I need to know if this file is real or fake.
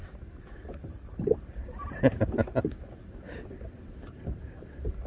real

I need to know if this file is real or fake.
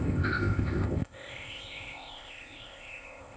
fake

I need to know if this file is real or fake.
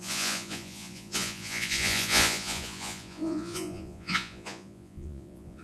fake